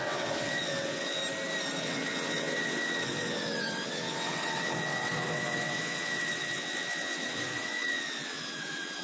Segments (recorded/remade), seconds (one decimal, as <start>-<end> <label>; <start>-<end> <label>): 0.0-1.2 remade; 1.2-1.8 recorded; 1.8-9.0 remade